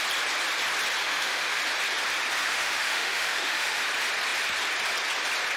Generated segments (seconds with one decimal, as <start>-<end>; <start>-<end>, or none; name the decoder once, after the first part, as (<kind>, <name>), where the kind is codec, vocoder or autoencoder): 1.0-1.6 (autoencoder, DAC-VAE); 2.4-3.8